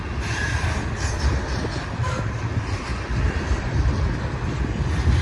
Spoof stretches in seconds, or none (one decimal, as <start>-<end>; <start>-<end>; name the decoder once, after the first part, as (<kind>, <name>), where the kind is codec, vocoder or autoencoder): none

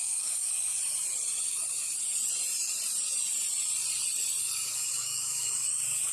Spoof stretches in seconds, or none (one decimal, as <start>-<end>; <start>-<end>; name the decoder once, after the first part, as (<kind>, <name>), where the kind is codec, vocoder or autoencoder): 0.0-0.7 (codec, DAC); 4.4-6.1